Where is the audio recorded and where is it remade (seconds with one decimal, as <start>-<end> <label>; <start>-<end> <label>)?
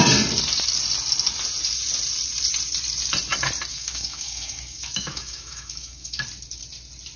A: 0.0-3.7 recorded; 3.7-6.2 remade; 6.2-7.2 recorded